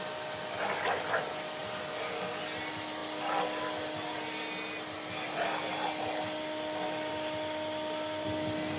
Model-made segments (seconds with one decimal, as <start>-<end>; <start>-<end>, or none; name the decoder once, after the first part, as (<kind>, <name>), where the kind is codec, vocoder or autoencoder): none